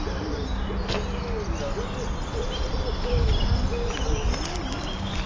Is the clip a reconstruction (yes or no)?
no